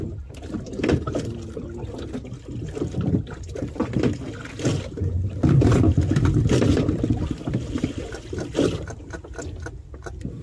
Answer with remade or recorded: recorded